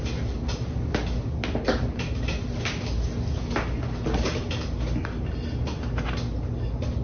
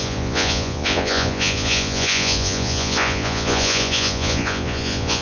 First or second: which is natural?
first